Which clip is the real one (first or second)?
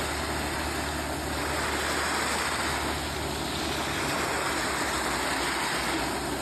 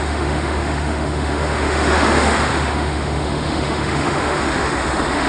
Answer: first